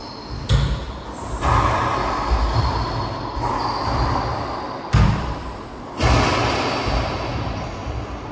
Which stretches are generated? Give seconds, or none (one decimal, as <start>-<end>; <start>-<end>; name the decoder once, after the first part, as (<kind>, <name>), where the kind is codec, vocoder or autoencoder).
none